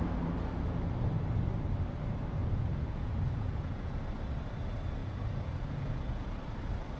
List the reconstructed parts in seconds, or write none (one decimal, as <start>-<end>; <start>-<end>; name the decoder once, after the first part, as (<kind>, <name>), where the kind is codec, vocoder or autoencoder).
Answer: 2.4-4.0 (vocoder, Vocos); 5.0-6.4

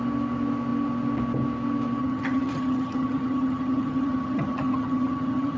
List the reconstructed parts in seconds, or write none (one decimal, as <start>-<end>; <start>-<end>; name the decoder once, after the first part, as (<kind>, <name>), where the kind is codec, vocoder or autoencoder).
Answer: 2.0-5.6 (vocoder, HiFi-GAN)

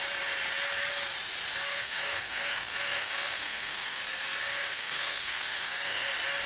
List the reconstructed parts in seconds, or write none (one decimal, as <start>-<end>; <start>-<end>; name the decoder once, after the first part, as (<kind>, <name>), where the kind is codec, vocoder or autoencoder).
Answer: 1.7-4.0 (codec, SNAC); 4.5-6.1